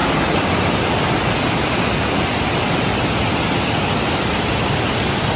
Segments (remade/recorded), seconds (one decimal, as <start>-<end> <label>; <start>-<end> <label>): 0.0-5.4 recorded